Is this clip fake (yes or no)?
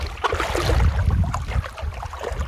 no